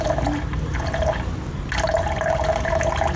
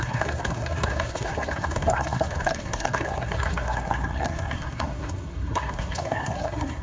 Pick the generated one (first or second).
second